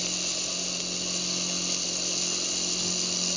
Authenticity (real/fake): real